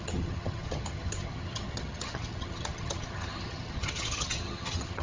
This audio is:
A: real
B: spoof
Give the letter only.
B